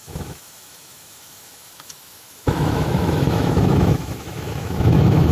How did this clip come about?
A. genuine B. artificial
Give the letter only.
B